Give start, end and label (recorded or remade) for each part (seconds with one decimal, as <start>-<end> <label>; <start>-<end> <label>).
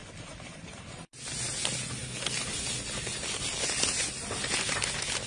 0.0-5.3 recorded